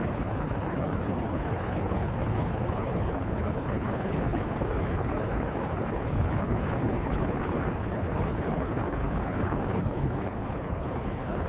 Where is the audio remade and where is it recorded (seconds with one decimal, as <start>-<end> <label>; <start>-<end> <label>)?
0.0-11.5 remade